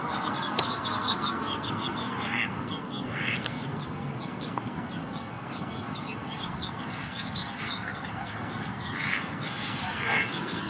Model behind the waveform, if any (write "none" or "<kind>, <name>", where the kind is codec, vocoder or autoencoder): codec, SNAC